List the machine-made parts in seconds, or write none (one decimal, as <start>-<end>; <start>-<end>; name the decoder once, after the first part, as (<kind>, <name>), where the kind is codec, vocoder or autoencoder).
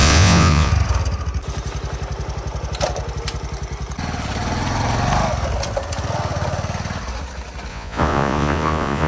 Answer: 0.0-0.7 (vocoder, Vocos); 7.7-9.1